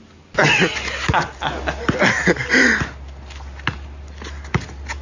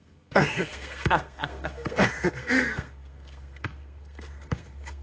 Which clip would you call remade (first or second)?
second